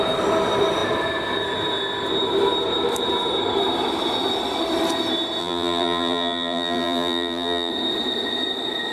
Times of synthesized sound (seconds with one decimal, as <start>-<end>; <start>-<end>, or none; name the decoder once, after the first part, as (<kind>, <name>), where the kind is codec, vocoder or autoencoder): 5.4-7.7 (vocoder, BigVGAN v2)